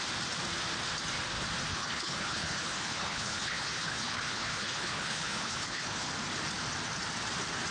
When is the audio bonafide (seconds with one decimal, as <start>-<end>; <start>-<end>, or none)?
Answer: 0.0-1.7; 6.1-7.7